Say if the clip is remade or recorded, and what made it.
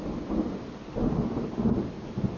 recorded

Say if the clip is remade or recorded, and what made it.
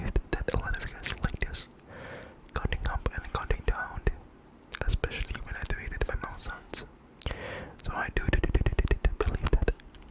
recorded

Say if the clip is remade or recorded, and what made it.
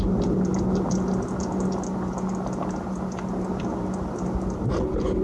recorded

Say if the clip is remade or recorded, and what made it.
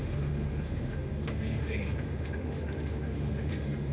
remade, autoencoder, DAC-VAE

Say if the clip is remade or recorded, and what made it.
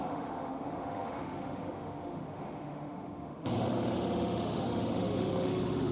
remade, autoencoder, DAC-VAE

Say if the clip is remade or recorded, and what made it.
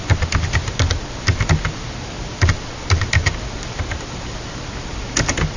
recorded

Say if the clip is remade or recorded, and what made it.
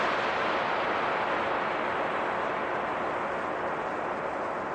recorded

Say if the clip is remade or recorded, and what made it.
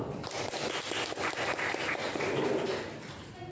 recorded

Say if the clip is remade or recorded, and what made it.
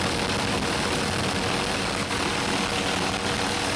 recorded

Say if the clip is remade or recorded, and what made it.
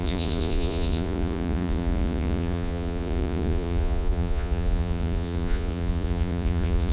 remade, vocoder, Vocos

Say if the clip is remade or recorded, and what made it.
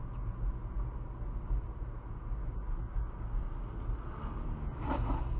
recorded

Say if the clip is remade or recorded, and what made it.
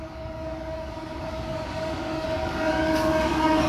remade, codec, DAC